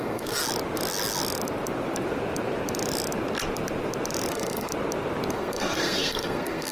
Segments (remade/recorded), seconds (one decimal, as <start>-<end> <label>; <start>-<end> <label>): 0.0-0.4 remade; 0.4-4.3 recorded; 4.3-4.7 remade; 4.7-5.3 recorded; 5.3-6.7 remade